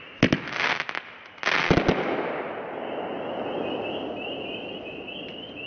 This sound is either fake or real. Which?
real